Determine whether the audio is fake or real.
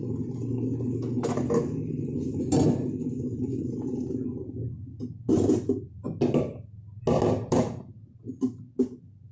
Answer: real